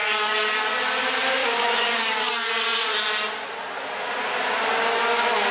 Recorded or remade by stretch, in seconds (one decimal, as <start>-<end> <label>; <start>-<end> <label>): 0.0-0.6 remade; 0.6-1.4 recorded; 1.4-2.3 remade; 2.3-5.5 recorded